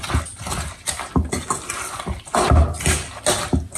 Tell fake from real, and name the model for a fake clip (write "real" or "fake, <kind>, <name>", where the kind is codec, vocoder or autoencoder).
real